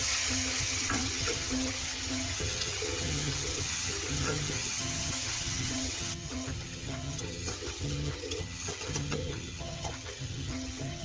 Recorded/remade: remade